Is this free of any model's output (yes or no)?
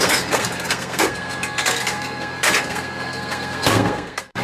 no